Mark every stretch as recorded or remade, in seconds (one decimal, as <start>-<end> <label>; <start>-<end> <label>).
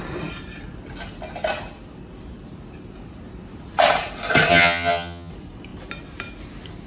0.0-4.5 recorded; 4.5-5.3 remade; 5.3-6.9 recorded